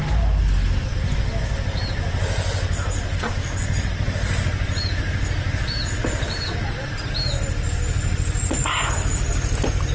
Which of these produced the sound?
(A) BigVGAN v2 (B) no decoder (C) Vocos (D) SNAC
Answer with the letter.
B